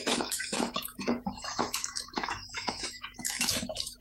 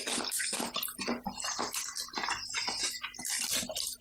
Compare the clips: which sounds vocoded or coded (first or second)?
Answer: first